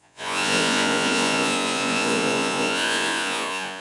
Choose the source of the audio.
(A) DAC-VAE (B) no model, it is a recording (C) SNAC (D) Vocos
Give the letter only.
D